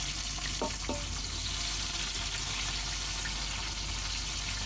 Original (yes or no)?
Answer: yes